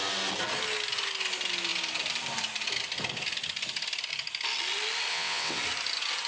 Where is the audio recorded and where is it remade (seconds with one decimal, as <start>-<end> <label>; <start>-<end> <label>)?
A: 0.0-5.1 recorded; 5.1-5.6 remade; 5.6-6.3 recorded